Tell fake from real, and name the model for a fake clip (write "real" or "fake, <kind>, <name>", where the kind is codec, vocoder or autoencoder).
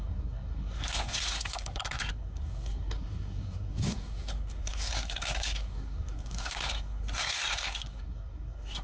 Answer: fake, codec, SNAC